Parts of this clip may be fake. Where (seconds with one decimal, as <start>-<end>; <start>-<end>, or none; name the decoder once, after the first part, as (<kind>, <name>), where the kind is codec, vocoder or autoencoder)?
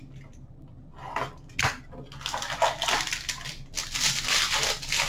none